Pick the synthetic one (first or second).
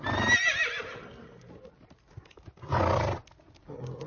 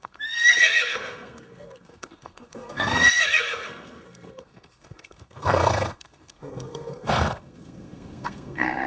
second